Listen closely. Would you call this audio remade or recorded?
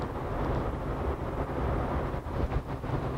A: recorded